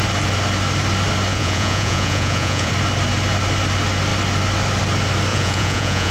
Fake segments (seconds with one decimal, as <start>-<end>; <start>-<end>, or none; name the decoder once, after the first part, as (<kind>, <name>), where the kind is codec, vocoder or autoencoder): 1.3-2.7 (vocoder, Vocos); 5.3-6.1